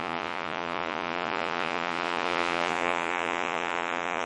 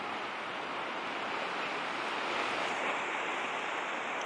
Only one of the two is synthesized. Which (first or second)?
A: first